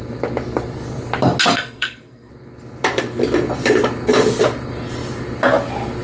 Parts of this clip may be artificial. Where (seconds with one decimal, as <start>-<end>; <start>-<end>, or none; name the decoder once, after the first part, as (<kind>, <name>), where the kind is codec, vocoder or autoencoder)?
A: 1.5-2.3 (codec, SNAC)